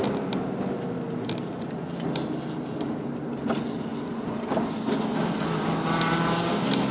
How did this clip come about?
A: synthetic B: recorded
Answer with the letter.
B